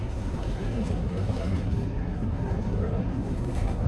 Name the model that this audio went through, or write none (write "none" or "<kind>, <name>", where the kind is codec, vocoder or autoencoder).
codec, SNAC